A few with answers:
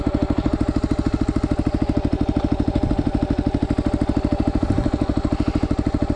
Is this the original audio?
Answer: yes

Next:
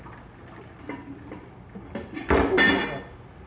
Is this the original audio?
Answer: yes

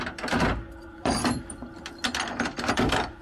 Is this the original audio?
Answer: yes